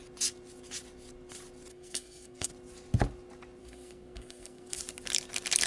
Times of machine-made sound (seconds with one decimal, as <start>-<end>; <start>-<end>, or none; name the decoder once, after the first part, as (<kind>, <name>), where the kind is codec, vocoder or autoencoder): 1.7-2.5 (codec, SNAC); 3.6-4.8